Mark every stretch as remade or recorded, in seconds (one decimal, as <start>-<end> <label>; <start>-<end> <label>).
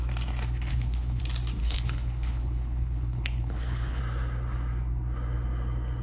0.0-0.7 recorded; 0.7-1.2 remade; 1.2-1.6 recorded; 1.6-4.0 remade; 4.0-6.0 recorded